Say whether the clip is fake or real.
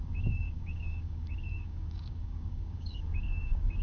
fake